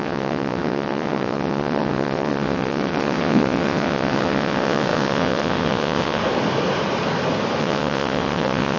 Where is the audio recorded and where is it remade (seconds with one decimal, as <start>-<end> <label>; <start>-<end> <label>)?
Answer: 0.0-6.2 remade; 6.2-7.6 recorded; 7.6-8.8 remade